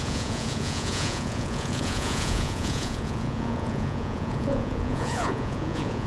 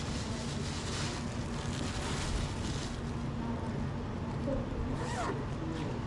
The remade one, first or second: first